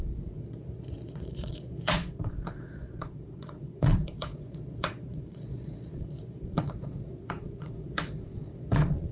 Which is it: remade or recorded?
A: remade